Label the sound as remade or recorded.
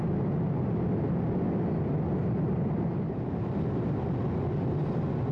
recorded